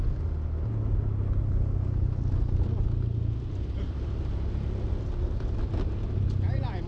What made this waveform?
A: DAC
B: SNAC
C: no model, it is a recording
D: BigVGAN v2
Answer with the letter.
C